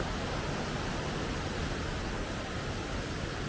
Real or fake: real